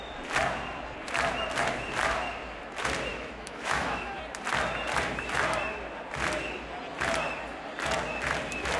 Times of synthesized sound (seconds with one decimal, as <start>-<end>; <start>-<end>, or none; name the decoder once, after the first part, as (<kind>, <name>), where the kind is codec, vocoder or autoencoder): 3.1-4.2 (autoencoder, DAC-VAE)

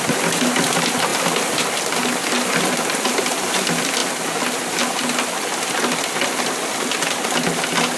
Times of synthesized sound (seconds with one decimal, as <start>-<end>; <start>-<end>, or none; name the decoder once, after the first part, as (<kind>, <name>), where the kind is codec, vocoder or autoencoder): none